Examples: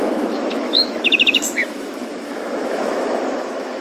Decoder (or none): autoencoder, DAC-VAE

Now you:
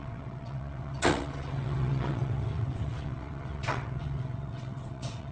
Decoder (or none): vocoder, WaveNeXt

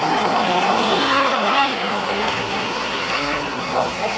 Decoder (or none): codec, SNAC